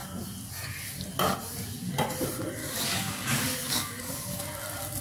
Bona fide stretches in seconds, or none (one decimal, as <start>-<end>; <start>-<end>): 0.0-2.6; 4.4-5.0